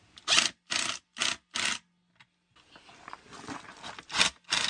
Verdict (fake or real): real